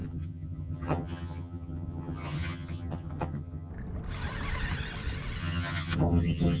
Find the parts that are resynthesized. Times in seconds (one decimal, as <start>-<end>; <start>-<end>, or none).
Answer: 0.0-3.7; 5.4-6.6